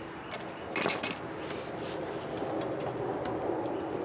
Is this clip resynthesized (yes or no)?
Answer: no